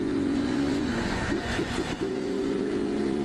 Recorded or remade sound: remade